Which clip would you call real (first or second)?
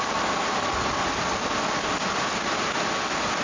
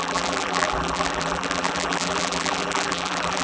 first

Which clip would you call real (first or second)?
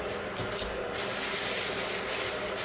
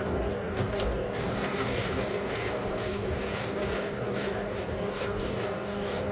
first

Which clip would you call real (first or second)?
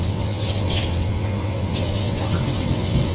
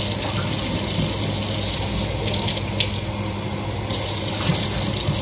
second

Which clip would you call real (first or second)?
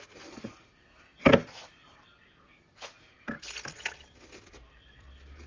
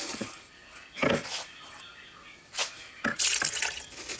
first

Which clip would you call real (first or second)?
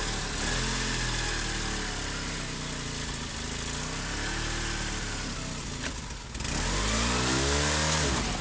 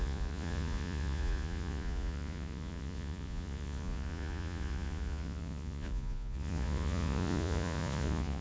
first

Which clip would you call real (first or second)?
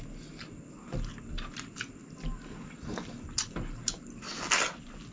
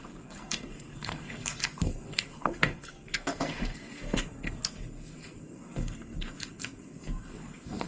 first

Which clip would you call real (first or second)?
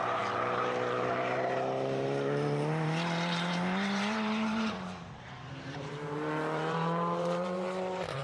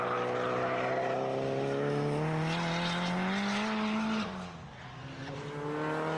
second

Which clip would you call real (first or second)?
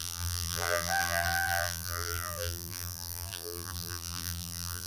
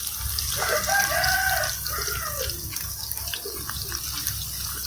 second